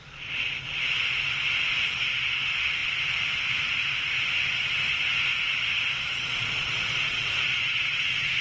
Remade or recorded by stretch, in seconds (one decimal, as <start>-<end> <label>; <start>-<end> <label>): 0.0-5.6 recorded; 5.6-8.4 remade

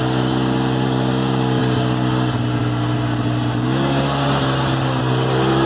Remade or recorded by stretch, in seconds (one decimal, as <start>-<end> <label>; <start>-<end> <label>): 0.0-5.7 recorded

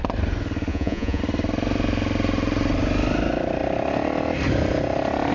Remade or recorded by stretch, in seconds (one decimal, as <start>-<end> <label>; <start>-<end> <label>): 0.0-0.7 recorded; 0.7-1.2 remade; 1.2-5.3 recorded

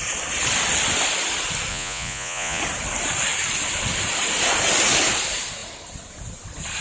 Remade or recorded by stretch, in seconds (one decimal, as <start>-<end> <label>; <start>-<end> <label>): 0.0-1.7 recorded; 1.7-2.6 remade; 2.6-6.8 recorded

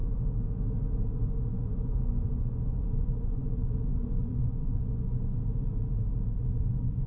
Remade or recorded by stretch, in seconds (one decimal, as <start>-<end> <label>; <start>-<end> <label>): 0.0-1.5 recorded; 1.5-5.4 remade; 5.4-6.4 recorded; 6.4-7.1 remade